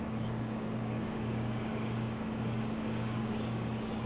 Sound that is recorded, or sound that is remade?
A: remade